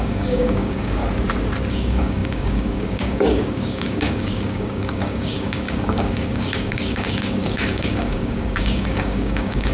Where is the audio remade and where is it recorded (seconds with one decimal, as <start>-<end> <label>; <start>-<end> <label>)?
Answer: 0.0-1.0 remade; 1.0-1.7 recorded; 1.7-9.7 remade